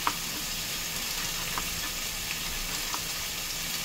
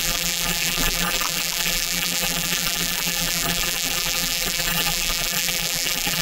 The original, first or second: first